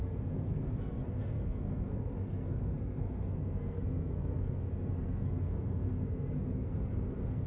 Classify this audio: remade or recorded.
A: remade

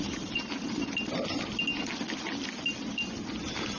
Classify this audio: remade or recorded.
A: recorded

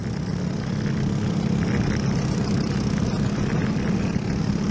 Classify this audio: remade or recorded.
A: recorded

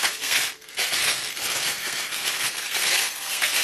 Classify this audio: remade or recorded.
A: remade